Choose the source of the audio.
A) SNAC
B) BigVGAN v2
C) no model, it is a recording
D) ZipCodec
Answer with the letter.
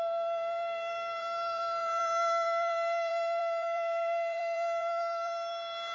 B